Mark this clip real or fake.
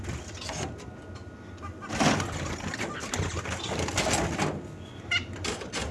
real